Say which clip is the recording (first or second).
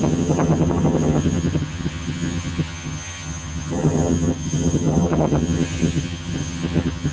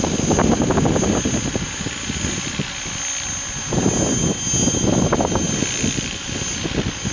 second